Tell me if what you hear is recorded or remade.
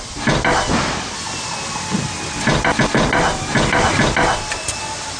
recorded